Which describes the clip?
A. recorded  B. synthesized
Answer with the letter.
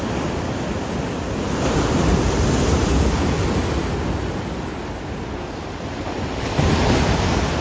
A